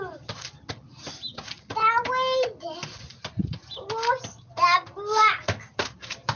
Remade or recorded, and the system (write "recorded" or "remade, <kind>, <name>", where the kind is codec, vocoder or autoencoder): recorded